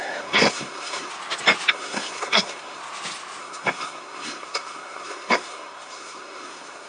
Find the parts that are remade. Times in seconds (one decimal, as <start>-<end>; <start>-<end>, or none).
0.0-1.1; 1.7-2.8; 3.4-6.9